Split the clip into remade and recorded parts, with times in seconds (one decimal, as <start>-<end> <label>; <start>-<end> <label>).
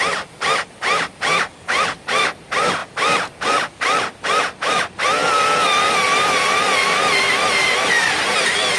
0.0-2.8 remade; 2.8-4.4 recorded; 4.4-5.2 remade; 5.2-5.9 recorded; 5.9-8.8 remade